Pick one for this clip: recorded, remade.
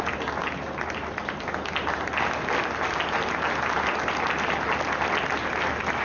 recorded